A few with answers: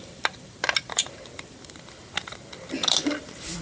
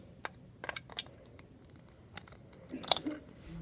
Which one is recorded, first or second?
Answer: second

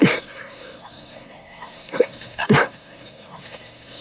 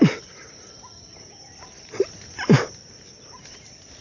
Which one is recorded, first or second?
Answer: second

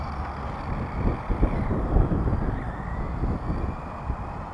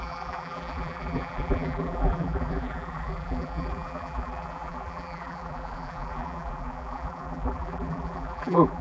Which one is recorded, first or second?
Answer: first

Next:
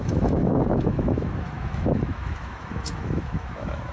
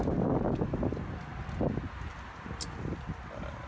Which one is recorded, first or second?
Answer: second